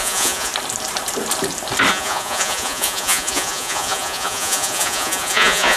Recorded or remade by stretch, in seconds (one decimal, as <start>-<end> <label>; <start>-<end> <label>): 0.0-0.5 remade; 0.5-1.9 recorded; 1.9-5.8 remade